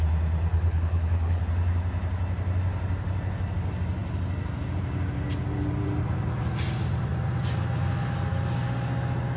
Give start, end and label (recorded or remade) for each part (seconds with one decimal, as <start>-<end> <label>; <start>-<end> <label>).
0.0-0.5 recorded; 0.5-1.4 remade; 1.4-9.4 recorded